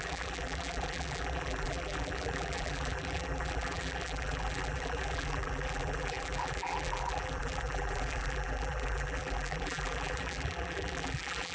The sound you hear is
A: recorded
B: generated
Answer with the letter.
B